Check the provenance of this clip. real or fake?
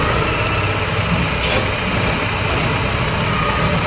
real